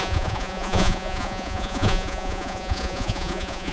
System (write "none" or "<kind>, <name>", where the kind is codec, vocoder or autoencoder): vocoder, Vocos